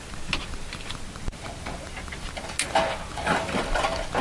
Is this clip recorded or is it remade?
recorded